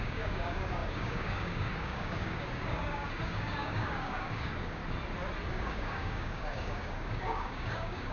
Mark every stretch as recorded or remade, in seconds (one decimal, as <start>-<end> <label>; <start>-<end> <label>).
0.0-4.8 remade; 4.8-5.5 recorded; 5.5-8.1 remade